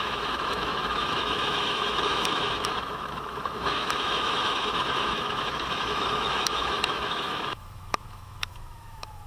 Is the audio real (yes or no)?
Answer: no